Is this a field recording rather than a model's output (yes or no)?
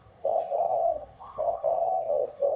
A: no